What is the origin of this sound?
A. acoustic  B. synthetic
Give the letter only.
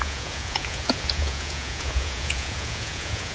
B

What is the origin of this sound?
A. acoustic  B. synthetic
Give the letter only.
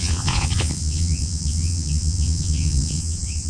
B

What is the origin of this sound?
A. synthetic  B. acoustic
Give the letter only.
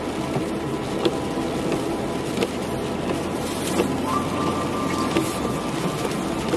B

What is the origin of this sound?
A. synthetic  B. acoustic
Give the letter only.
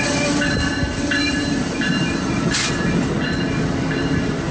B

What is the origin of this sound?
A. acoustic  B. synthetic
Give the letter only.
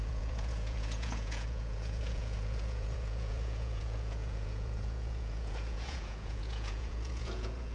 B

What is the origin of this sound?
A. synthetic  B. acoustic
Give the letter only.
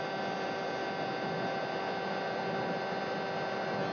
B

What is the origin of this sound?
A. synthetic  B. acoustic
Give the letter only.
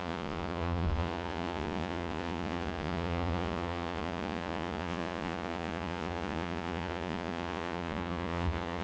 A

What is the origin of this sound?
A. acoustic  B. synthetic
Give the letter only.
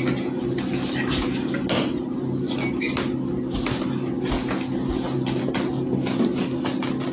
A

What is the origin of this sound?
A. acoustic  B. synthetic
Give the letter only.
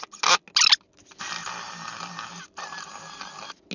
A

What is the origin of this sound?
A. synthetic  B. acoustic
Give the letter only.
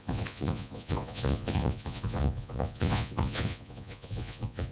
A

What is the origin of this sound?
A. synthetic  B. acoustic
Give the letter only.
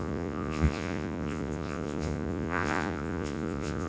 A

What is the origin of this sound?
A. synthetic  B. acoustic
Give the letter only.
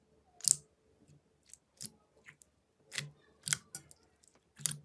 B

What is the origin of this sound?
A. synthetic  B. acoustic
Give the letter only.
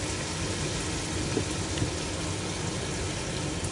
B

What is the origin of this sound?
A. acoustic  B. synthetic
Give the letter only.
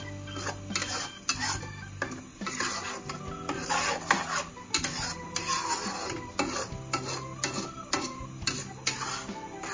A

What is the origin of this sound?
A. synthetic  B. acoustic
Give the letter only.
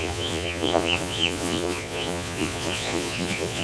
A